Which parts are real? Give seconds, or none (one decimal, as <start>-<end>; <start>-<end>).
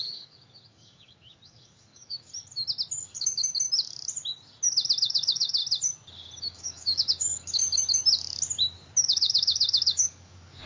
2.3-3.0; 3.4-5.0; 5.6-6.4; 7.6-9.0